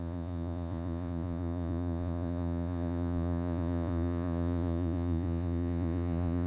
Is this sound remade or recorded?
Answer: remade